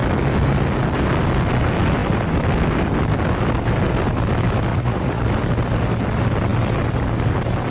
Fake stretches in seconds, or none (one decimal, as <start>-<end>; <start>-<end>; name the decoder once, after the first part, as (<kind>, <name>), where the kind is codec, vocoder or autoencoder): 4.7-5.2 (vocoder, Vocos)